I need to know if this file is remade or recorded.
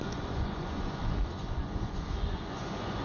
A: remade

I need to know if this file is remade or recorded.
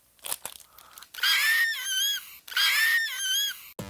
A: recorded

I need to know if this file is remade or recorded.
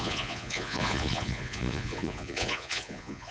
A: remade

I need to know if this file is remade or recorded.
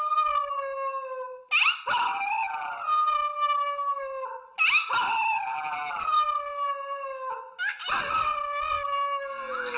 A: recorded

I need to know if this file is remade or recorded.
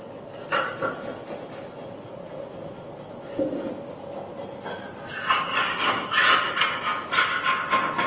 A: recorded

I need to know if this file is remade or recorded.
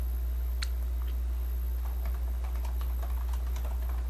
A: recorded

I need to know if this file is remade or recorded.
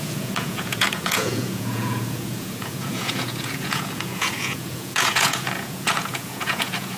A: remade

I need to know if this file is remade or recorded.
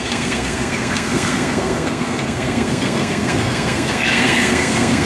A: remade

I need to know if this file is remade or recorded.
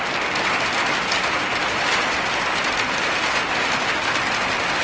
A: recorded